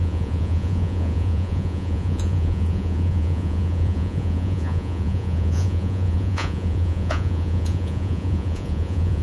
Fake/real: fake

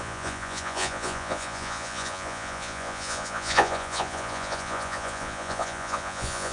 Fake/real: fake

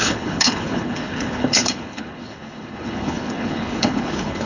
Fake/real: fake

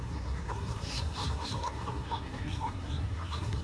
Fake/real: fake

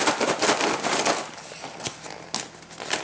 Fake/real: real